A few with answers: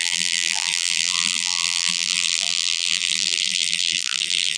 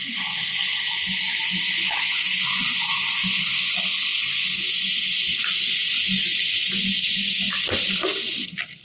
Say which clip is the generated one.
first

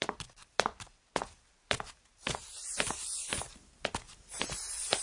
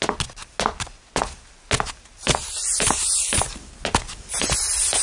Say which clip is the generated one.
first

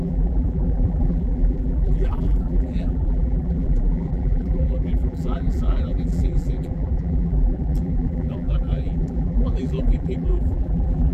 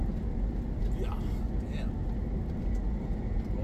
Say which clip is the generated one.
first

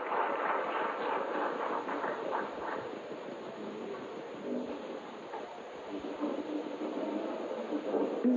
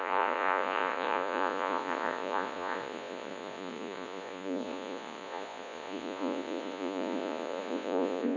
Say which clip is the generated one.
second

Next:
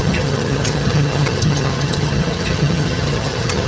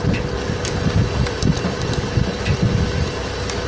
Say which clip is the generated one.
first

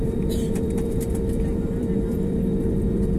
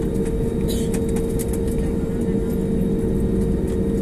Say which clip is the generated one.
first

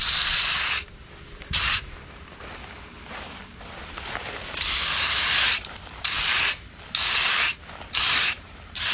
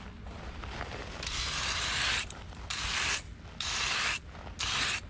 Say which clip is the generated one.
first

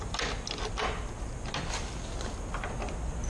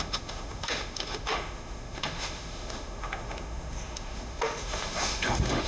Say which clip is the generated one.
second